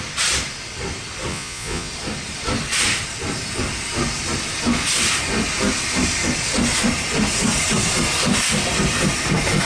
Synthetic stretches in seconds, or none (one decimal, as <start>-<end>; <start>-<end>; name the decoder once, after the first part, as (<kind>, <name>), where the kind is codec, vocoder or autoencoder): 1.3-1.9 (vocoder, Vocos)